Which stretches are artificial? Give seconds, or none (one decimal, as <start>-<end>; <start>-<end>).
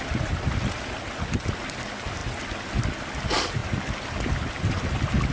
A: none